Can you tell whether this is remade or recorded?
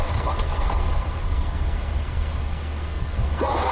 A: remade